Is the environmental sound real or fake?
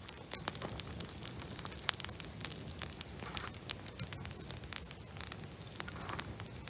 real